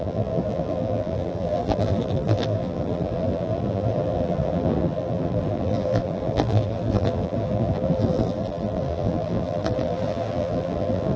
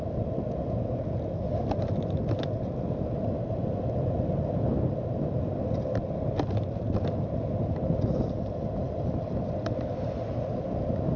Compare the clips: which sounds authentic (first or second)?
second